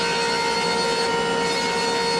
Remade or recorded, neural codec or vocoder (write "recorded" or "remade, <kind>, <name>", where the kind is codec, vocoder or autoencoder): recorded